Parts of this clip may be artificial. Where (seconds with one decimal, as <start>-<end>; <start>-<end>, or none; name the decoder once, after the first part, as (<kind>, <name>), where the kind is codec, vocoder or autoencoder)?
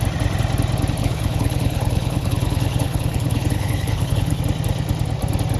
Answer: 1.0-4.4 (codec, HILCodec)